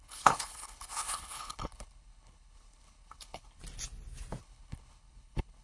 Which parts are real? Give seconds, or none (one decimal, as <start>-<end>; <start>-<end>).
3.6-4.4